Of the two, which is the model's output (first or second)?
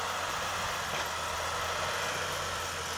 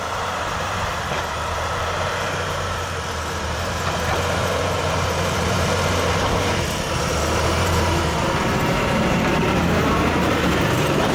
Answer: second